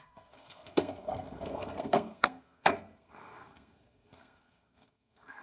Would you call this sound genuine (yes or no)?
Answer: no